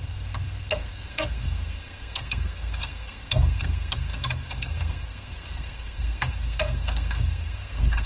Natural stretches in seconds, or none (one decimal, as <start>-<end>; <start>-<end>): none